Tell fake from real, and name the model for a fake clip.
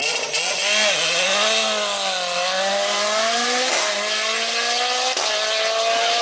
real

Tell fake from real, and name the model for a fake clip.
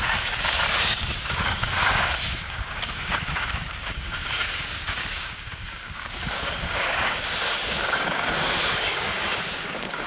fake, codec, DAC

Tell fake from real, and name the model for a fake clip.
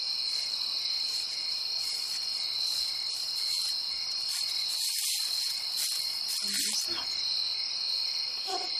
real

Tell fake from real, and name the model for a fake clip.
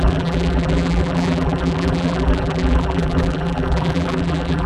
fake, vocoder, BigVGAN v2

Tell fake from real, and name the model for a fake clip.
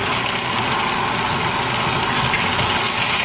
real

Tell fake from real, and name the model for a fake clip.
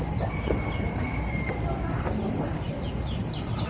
real